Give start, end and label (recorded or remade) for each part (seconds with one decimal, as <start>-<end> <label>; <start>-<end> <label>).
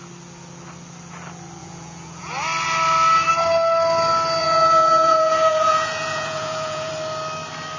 0.0-1.6 recorded; 1.6-2.3 remade; 2.3-4.4 recorded; 4.4-6.9 remade; 6.9-7.8 recorded